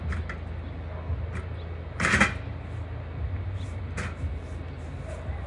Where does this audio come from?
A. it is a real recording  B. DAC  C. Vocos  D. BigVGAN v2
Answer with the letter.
A